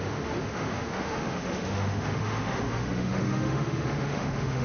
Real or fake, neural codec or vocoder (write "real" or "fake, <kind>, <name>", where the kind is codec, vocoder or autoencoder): fake, autoencoder, DAC-VAE